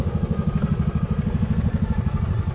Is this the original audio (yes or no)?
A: yes